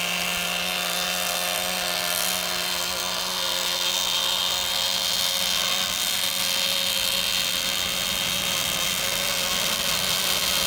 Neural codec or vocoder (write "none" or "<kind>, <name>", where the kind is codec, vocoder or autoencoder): none